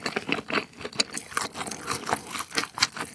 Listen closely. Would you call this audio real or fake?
real